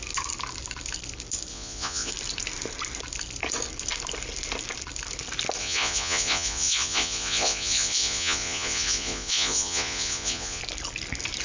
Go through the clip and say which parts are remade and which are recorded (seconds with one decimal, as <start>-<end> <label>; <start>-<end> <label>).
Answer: 0.0-1.5 recorded; 1.5-2.1 remade; 2.1-5.6 recorded; 5.6-10.6 remade; 10.6-11.4 recorded